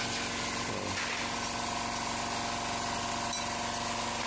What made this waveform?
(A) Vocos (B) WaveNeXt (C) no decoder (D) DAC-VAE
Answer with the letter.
C